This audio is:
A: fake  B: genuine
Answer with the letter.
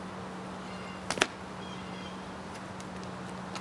B